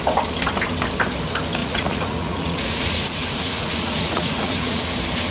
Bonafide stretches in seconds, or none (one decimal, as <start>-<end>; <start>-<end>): 0.0-1.6; 4.8-5.3